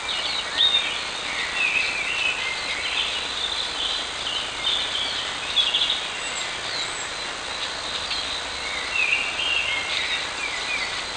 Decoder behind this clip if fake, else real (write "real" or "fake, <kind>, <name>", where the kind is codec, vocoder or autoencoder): real